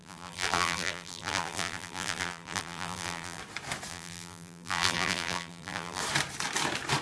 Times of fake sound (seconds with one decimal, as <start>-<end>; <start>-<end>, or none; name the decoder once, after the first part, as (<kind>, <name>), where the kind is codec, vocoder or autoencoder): 0.0-3.4 (vocoder, BigVGAN v2); 3.9-6.0